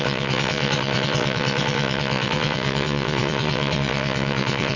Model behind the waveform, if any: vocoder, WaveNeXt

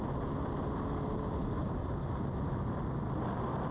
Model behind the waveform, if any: none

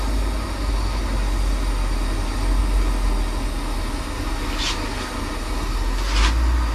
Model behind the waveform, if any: none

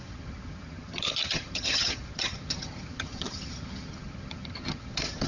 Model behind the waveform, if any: vocoder, HiFi-GAN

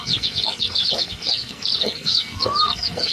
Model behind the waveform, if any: codec, SNAC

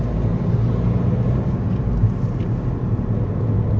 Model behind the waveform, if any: none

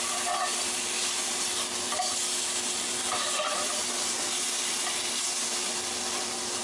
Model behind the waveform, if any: none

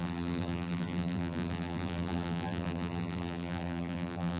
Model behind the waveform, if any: vocoder, BigVGAN v2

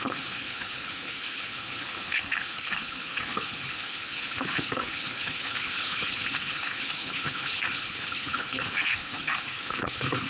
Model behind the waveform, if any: codec, HILCodec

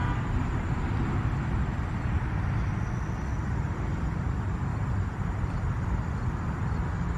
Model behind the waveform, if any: none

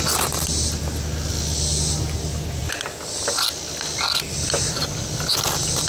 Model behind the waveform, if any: none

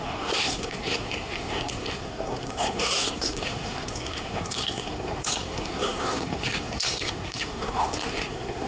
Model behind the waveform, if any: codec, SNAC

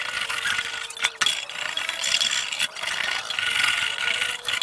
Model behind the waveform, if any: none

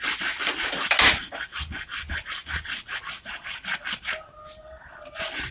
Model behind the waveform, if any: none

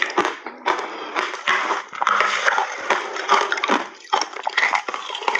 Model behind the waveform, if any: vocoder, BigVGAN v2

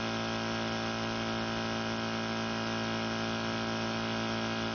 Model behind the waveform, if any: none